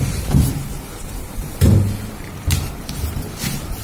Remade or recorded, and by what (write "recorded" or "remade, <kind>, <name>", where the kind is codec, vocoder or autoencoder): remade, vocoder, BigVGAN v2